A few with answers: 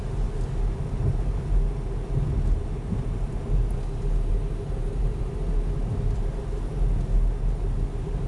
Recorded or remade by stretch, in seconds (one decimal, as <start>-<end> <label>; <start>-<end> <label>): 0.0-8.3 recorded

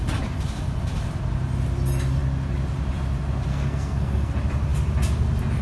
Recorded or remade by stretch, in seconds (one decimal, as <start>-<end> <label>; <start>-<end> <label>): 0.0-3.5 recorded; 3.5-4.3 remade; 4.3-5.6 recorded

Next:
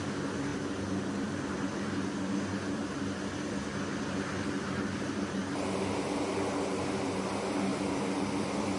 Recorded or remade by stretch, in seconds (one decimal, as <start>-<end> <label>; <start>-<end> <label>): 0.0-8.8 recorded